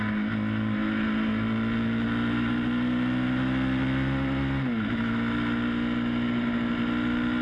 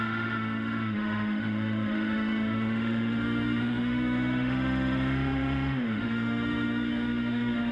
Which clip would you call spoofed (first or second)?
second